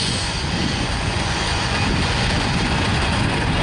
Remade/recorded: remade